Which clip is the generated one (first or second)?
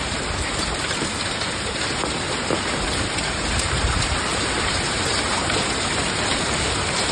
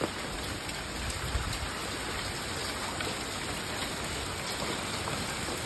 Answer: first